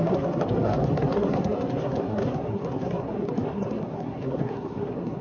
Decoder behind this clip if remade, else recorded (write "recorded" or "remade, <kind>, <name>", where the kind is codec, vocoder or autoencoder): remade, codec, SNAC